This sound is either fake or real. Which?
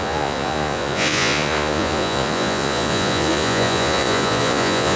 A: fake